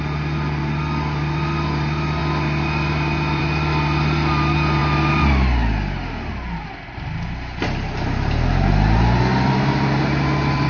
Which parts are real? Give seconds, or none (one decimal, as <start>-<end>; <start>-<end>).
0.0-10.7